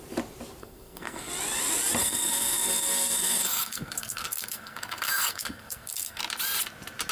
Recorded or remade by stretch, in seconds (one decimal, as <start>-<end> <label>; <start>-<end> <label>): 0.0-0.6 recorded; 0.6-1.3 remade; 1.3-2.0 recorded; 2.0-6.2 remade; 6.2-7.1 recorded

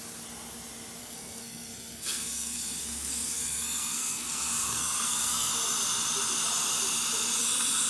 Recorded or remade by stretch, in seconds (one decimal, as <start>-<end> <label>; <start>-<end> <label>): 0.0-1.0 recorded; 1.0-5.5 remade; 5.5-7.9 recorded

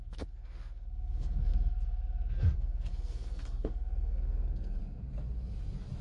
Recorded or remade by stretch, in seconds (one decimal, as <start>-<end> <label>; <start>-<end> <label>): 0.0-4.8 remade; 4.8-6.0 recorded

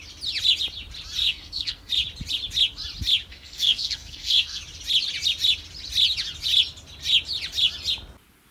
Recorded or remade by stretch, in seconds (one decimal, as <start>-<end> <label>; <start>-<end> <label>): 0.0-1.2 recorded; 1.2-1.9 remade; 1.9-3.3 recorded; 3.3-4.6 remade; 4.6-8.5 recorded

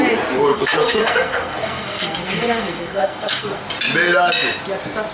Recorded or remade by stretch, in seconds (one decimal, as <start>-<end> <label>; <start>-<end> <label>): 0.0-0.5 recorded; 0.5-3.6 remade; 3.6-5.1 recorded